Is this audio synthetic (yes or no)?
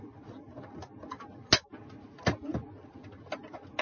no